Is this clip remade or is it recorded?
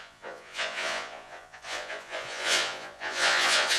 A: remade